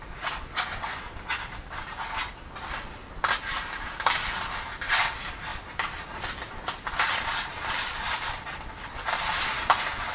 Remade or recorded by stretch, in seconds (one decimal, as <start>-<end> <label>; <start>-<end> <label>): 0.0-5.5 recorded; 5.5-8.9 remade; 8.9-10.1 recorded